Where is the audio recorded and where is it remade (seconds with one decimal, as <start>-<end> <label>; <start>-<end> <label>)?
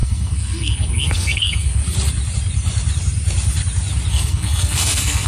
0.0-1.8 remade; 1.8-4.1 recorded; 4.1-5.3 remade